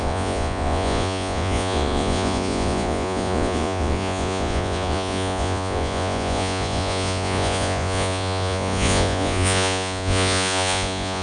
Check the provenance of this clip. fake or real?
fake